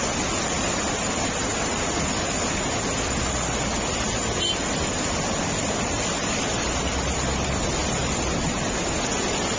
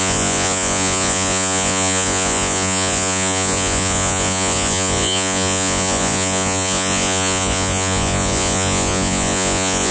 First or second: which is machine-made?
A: second